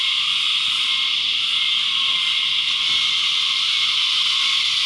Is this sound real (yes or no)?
yes